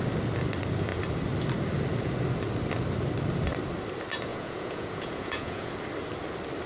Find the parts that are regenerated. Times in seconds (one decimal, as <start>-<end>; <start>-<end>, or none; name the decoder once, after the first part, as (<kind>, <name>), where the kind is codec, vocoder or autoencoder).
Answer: 4.3-5.7 (vocoder, Vocos)